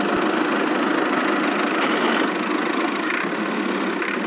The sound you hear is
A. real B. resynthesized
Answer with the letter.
A